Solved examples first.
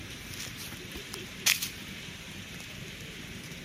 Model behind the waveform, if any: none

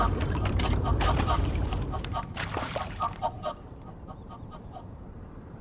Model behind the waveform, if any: vocoder, BigVGAN v2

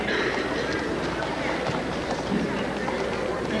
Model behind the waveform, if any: none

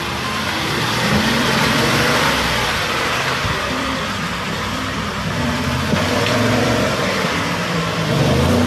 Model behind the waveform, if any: vocoder, BigVGAN v2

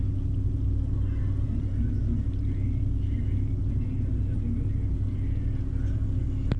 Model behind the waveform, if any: none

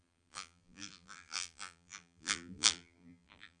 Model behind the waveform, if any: vocoder, BigVGAN v2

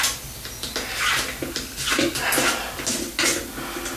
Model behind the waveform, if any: none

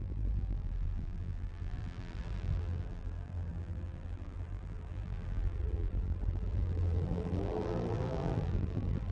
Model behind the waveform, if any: vocoder, BigVGAN v2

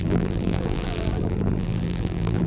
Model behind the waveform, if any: vocoder, BigVGAN v2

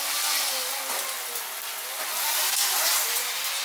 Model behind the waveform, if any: none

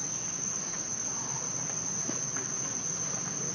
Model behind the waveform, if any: none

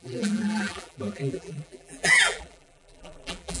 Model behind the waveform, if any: vocoder, BigVGAN v2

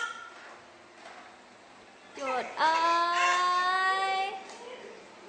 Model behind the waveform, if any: none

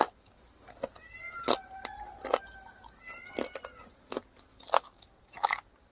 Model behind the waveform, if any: none